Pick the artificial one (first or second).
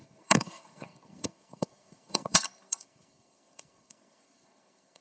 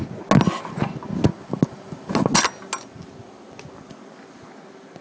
first